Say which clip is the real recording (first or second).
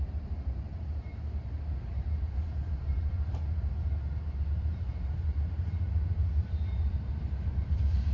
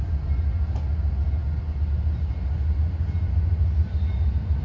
second